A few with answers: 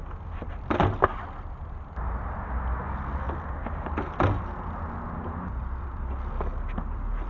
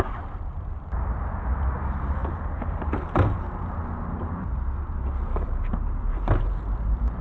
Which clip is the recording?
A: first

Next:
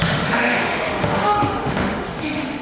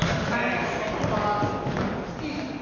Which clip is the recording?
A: second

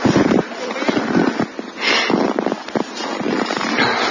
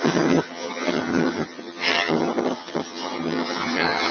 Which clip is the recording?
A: first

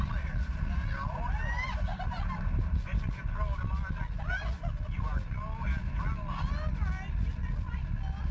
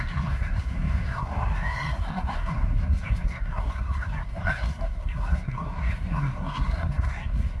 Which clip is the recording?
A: first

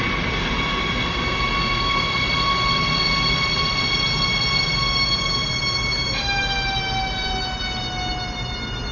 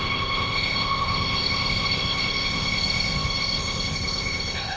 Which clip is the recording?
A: first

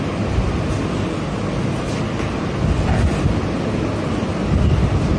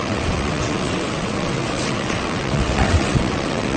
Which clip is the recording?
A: first